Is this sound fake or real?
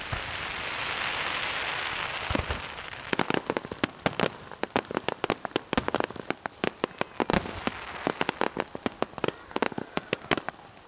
real